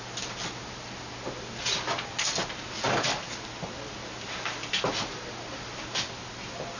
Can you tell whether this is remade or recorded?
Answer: recorded